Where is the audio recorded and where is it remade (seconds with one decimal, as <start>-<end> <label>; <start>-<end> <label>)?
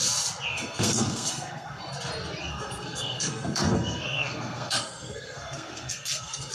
0.0-0.5 recorded; 0.5-1.8 remade; 1.8-2.5 recorded; 2.5-6.5 remade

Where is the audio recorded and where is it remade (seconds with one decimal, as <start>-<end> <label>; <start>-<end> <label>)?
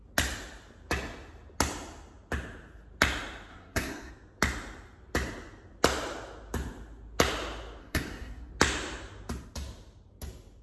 0.0-3.5 recorded; 3.5-4.1 remade; 4.1-7.8 recorded; 7.8-8.5 remade; 8.5-10.6 recorded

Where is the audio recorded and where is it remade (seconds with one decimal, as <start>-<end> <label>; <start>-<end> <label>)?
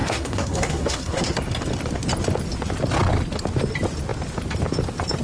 0.0-1.4 remade; 1.4-5.2 recorded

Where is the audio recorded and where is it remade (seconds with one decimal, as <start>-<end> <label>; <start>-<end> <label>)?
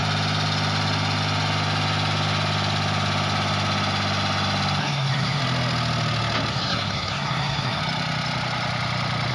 0.0-4.8 recorded; 4.8-5.4 remade; 5.4-6.5 recorded; 6.5-7.8 remade; 7.8-9.3 recorded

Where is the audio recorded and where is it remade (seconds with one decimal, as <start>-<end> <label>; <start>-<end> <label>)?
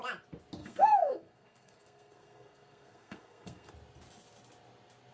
0.0-0.6 recorded; 0.6-3.7 remade; 3.7-5.1 recorded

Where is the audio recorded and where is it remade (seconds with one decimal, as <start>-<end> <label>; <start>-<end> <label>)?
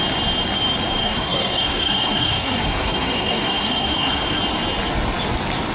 0.0-1.0 recorded; 1.0-4.4 remade; 4.4-5.7 recorded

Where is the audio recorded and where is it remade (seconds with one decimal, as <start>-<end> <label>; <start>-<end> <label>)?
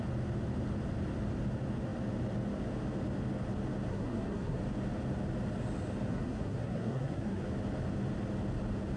0.0-3.9 recorded; 3.9-4.6 remade; 4.6-6.1 recorded; 6.1-7.4 remade; 7.4-9.0 recorded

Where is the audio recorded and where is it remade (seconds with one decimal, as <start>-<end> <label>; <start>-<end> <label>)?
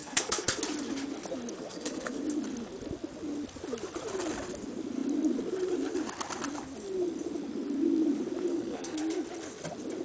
0.0-0.6 remade; 0.6-1.6 recorded; 1.6-2.2 remade; 2.2-8.5 recorded; 8.5-9.0 remade; 9.0-10.0 recorded